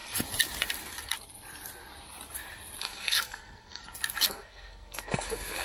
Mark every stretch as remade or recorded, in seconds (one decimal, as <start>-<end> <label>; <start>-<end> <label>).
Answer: 0.0-2.8 recorded; 2.8-3.8 remade; 3.8-4.3 recorded; 4.3-5.6 remade